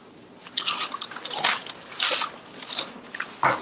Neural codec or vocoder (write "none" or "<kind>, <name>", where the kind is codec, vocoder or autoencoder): none